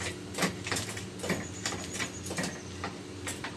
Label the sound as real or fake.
real